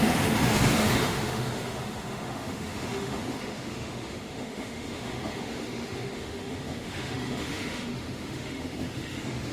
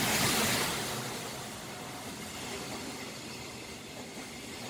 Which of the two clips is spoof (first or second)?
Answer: first